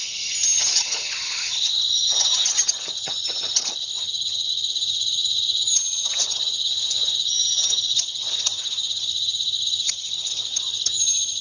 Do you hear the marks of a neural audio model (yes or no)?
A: yes